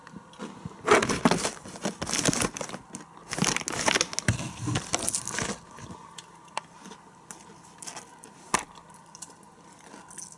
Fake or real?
real